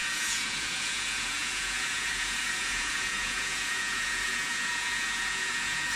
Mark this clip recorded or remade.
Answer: remade